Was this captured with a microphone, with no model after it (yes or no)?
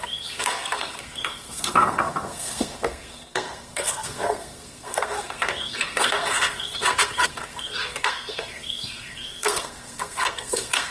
no